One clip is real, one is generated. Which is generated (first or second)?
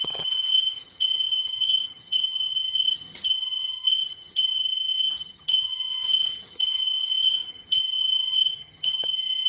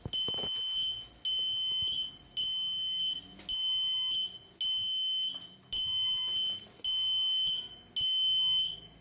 first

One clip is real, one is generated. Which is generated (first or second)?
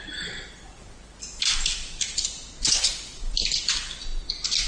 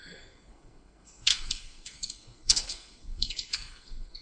second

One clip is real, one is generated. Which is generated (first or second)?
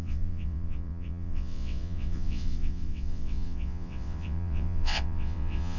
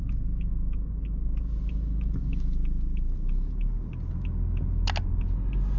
first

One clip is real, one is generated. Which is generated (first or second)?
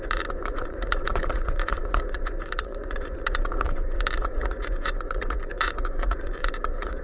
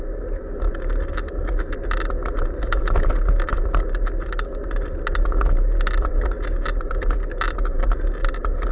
first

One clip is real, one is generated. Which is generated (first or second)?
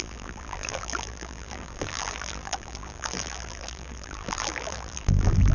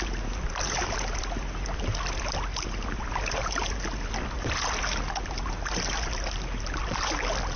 first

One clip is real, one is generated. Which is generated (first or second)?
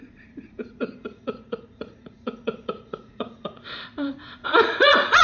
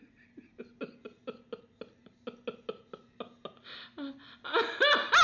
first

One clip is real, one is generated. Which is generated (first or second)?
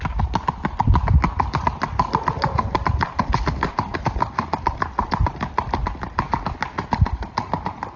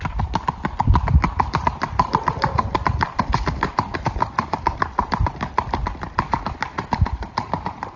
second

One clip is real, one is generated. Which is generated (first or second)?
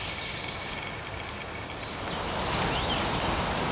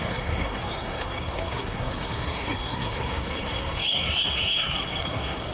second